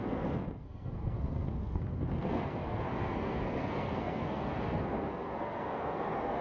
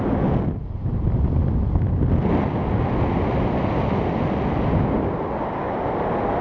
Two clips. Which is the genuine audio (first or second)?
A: second